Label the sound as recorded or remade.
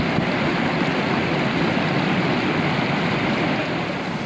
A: recorded